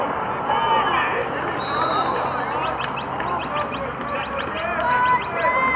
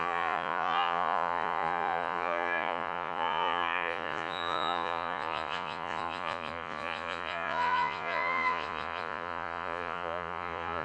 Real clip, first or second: first